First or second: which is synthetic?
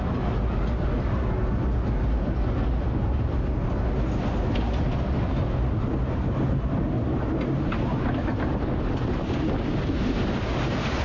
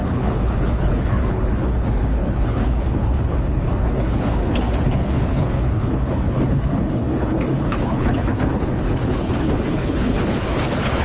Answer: second